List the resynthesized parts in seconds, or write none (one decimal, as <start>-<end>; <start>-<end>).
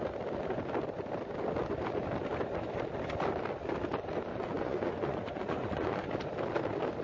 4.3-6.0